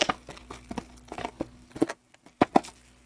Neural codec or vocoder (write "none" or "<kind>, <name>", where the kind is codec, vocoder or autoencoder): none